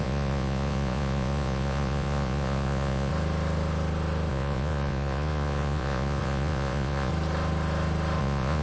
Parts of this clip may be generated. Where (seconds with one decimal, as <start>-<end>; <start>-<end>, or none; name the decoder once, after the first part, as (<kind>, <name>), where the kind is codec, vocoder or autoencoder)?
0.0-3.1 (vocoder, Vocos); 4.3-7.1; 8.2-8.6